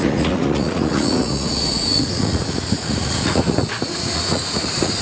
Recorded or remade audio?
remade